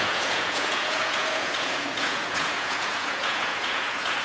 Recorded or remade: remade